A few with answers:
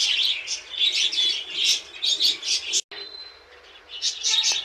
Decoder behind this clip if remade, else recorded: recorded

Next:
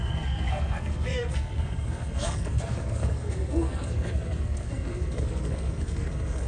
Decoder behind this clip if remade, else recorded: remade, codec, SNAC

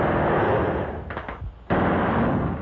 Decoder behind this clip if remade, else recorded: recorded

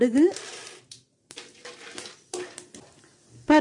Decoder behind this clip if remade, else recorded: remade, vocoder, BigVGAN v2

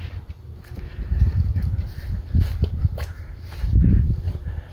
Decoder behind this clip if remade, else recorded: remade, vocoder, BigVGAN v2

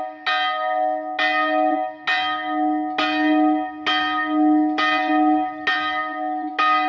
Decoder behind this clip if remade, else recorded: recorded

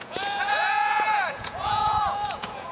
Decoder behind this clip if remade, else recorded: remade, vocoder, Vocos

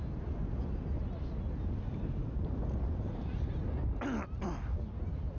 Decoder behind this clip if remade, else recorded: recorded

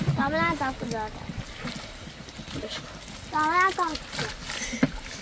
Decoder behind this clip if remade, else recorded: recorded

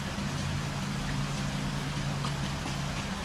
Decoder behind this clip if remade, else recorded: recorded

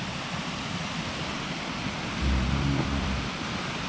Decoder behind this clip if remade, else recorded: remade, vocoder, BigVGAN v2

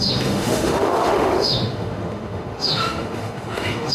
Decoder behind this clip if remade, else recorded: remade, autoencoder, DAC-VAE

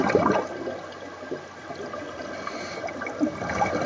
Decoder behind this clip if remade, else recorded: recorded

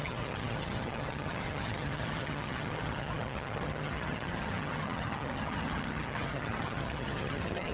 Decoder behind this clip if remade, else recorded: remade, vocoder, HiFi-GAN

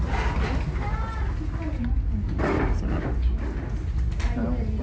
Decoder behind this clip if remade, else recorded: recorded